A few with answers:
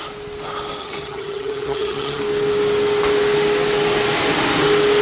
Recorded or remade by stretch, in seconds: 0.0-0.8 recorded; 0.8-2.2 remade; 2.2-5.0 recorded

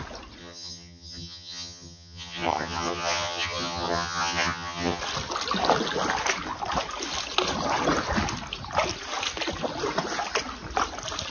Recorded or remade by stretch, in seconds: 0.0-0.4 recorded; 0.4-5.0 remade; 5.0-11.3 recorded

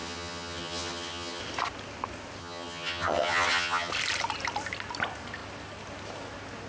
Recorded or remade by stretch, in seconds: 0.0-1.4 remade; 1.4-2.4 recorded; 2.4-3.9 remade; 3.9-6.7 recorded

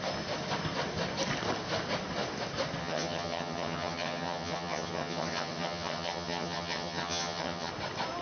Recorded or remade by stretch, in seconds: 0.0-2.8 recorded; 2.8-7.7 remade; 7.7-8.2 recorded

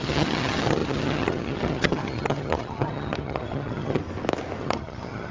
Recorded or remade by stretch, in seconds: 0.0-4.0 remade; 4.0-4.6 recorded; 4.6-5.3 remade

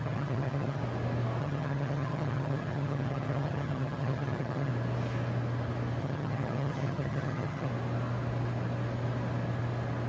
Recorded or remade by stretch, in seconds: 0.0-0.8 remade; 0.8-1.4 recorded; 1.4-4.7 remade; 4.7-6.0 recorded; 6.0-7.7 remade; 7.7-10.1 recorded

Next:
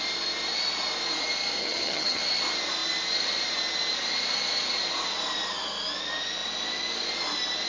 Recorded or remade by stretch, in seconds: 0.0-1.6 recorded; 1.6-2.2 remade; 2.2-7.7 recorded